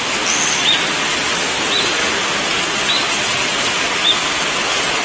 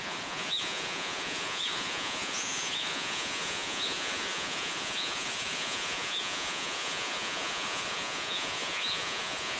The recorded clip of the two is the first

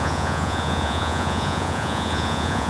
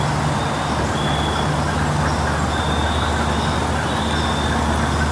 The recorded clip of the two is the second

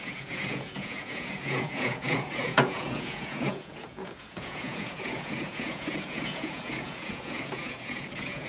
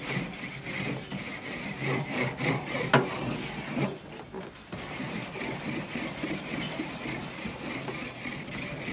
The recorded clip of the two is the second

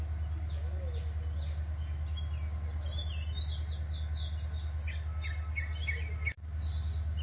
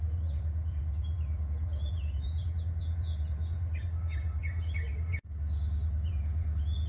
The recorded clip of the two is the first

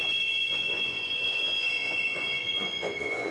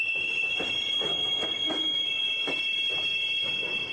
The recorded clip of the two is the second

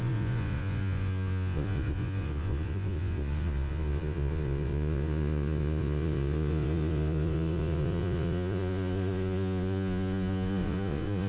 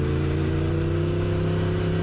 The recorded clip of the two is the second